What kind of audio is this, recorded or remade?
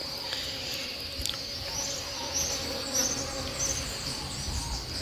recorded